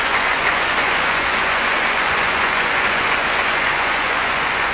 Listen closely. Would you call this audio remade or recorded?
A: remade